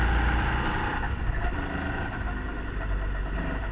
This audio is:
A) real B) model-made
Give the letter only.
A